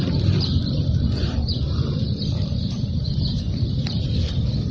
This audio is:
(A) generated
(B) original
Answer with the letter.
A